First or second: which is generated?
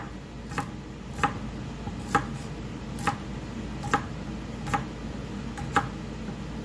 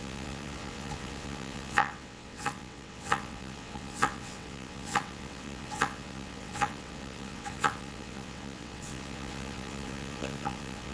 second